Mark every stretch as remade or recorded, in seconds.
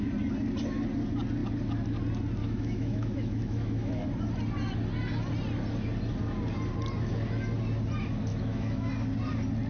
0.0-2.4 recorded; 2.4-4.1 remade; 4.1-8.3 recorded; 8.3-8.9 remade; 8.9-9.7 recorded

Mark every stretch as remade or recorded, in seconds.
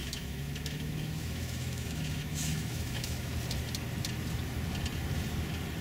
0.0-3.3 remade; 3.3-5.8 recorded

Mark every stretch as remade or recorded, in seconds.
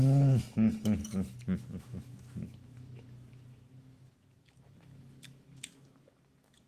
0.0-6.7 remade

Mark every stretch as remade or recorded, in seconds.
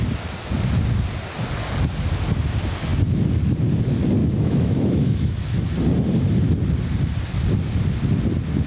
0.0-4.2 recorded; 4.2-5.6 remade; 5.6-8.7 recorded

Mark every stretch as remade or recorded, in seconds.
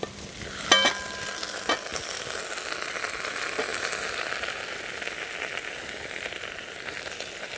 0.0-7.6 recorded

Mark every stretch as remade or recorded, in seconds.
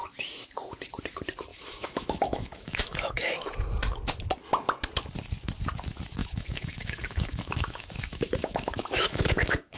0.0-1.5 recorded; 1.5-3.5 remade; 3.5-6.2 recorded; 6.2-9.8 remade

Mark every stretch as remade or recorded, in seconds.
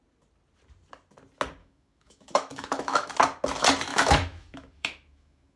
0.0-1.6 recorded; 1.6-3.1 remade; 3.1-3.9 recorded; 3.9-5.6 remade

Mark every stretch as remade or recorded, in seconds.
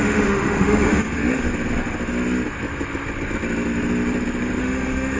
0.0-1.5 remade; 1.5-4.6 recorded; 4.6-5.2 remade